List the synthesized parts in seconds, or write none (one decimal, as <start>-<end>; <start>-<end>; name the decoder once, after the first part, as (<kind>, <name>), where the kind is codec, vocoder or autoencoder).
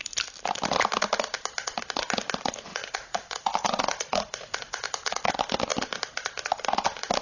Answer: 2.7-5.3 (vocoder, Vocos)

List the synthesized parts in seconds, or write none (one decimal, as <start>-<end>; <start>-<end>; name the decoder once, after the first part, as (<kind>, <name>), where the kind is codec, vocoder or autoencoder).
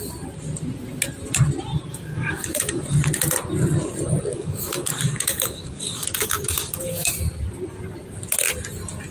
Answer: 1.9-3.0 (codec, DAC); 4.3-7.1